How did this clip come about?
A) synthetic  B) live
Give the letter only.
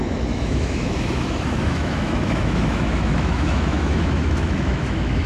A